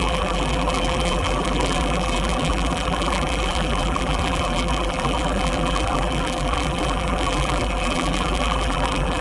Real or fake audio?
fake